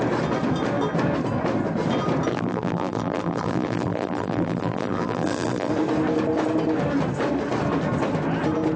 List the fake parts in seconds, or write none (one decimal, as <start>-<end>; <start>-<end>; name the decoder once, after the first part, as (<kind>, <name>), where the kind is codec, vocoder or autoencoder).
2.3-5.7 (vocoder, BigVGAN v2)

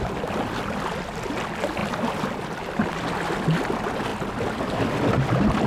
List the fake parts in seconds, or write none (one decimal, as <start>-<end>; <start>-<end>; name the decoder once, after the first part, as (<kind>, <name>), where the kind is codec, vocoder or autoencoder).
none

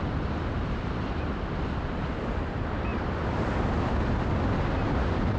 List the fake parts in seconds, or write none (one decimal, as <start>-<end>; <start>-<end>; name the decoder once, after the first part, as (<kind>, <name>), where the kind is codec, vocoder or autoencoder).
none

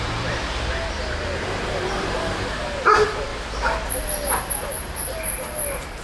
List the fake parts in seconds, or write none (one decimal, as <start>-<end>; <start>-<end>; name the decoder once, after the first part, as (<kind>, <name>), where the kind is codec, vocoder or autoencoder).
0.0-0.4 (vocoder, BigVGAN v2); 1.1-3.3; 4.6-6.0